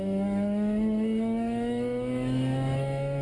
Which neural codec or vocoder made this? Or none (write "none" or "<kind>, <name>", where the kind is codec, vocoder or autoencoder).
autoencoder, DAC-VAE